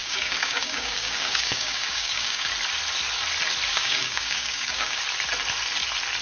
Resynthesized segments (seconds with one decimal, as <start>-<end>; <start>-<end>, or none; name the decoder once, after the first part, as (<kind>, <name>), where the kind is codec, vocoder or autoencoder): 0.0-2.5 (codec, DAC); 3.7-5.0